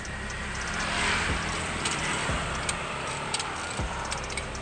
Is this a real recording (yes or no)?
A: no